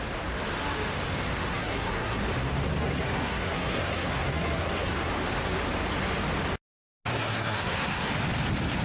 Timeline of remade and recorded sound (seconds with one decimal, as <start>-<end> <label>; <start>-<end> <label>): 0.0-1.5 recorded; 1.5-2.2 remade; 2.2-2.8 recorded; 2.8-5.1 remade; 5.1-7.1 recorded; 7.1-8.1 remade; 8.1-8.8 recorded